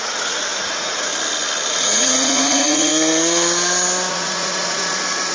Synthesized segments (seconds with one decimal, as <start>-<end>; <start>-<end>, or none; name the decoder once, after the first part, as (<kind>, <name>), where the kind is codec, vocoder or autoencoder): 0.0-1.1 (vocoder, Vocos); 1.7-2.9; 4.1-5.3